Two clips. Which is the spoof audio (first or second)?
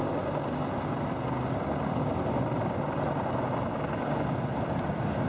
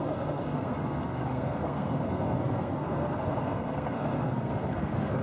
second